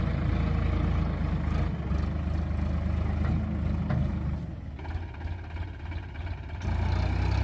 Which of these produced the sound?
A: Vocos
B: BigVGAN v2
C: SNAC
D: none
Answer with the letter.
D